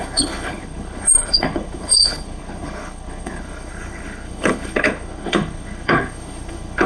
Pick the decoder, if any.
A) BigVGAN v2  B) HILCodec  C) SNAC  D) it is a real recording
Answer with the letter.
B